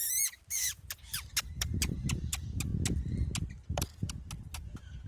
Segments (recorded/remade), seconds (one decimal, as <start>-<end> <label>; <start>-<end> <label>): 0.0-2.7 remade; 2.7-4.1 recorded; 4.1-5.1 remade